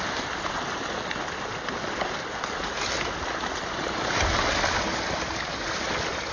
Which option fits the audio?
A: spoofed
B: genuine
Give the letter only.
B